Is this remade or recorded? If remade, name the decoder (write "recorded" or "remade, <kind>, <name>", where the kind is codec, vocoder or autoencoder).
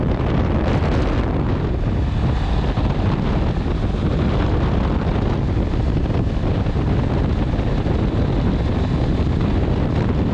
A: recorded